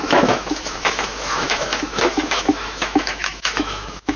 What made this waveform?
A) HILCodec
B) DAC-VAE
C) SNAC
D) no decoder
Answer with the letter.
B